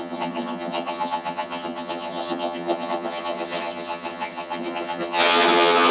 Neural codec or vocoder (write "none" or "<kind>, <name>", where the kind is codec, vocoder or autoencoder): vocoder, HiFi-GAN